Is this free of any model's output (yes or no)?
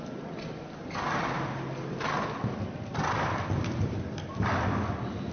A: yes